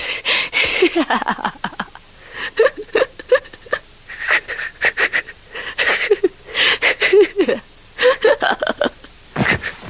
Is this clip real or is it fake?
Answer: real